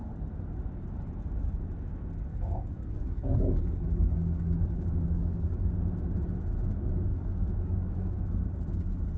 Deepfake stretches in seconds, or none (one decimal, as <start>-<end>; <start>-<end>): 2.3-5.7; 7.1-8.2